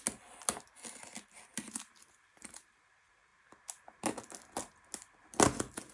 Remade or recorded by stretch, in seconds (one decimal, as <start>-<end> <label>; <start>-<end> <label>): 0.0-5.9 recorded